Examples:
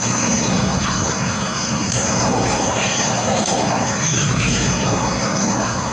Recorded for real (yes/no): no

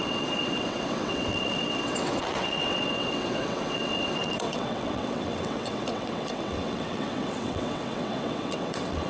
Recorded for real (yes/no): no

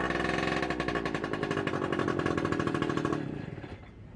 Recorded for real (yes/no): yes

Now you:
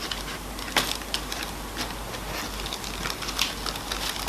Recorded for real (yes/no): yes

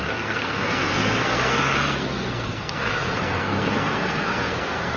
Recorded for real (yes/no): no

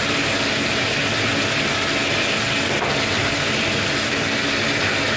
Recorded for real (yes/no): yes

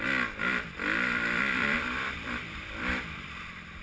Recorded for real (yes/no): no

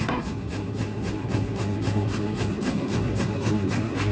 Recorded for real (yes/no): no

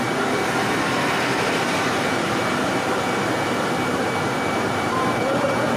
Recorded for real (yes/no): no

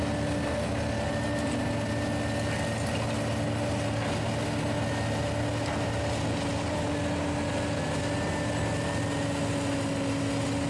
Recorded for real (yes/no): yes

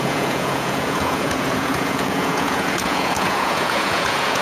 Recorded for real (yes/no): no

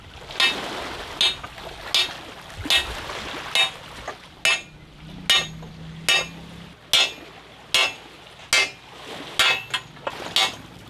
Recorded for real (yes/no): yes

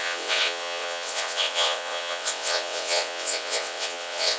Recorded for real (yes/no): no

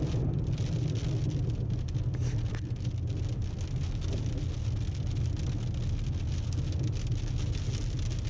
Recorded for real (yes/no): yes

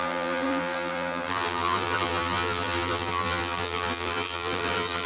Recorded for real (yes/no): no